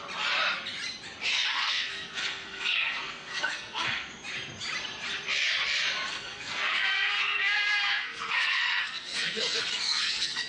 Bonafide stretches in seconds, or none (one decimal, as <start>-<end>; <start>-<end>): 0.0-1.5; 4.1-6.1